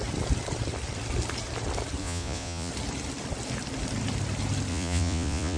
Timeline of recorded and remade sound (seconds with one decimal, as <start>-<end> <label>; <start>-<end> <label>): 0.0-2.0 recorded; 2.0-2.7 remade; 2.7-4.7 recorded; 4.7-5.6 remade